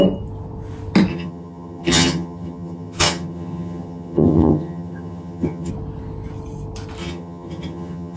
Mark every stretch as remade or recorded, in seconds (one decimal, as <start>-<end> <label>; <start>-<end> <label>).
0.0-1.1 recorded; 1.1-5.7 remade; 5.7-7.0 recorded; 7.0-8.2 remade